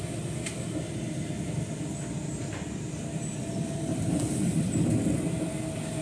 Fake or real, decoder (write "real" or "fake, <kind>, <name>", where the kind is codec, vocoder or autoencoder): real